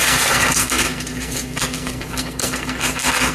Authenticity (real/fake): fake